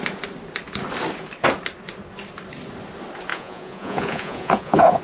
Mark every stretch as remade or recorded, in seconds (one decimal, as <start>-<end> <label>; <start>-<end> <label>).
0.0-3.3 recorded; 3.3-5.0 remade

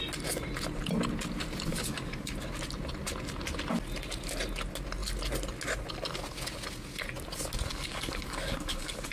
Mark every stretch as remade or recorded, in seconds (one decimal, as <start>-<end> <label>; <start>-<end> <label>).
0.0-1.7 recorded; 1.7-2.3 remade; 2.3-7.7 recorded; 7.7-9.1 remade

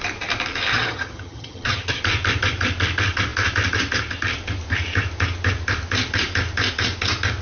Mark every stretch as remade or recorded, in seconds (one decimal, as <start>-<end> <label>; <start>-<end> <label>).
0.0-0.7 recorded; 0.7-2.0 remade; 2.0-7.4 recorded